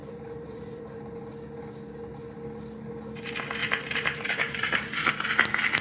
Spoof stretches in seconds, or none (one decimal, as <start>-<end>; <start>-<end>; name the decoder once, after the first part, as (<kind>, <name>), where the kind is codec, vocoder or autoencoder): 0.0-0.8 (vocoder, BigVGAN v2); 3.6-5.1